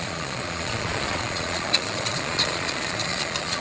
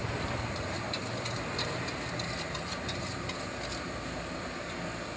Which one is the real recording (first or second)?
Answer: second